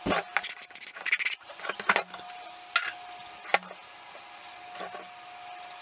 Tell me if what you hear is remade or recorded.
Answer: recorded